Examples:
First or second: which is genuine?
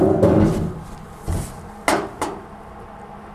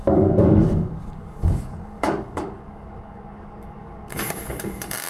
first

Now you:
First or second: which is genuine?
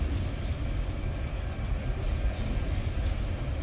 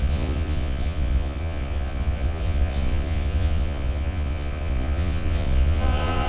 first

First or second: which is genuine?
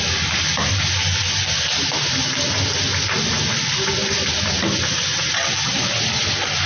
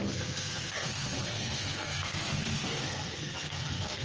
first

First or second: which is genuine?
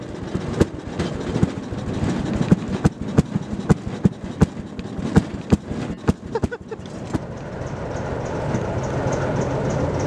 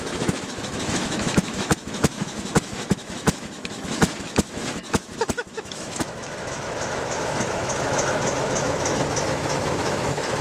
first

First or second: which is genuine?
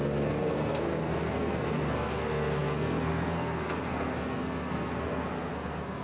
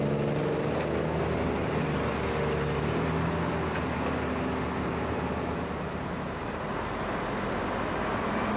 second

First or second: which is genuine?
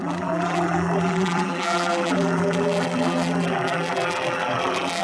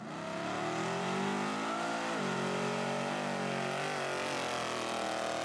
second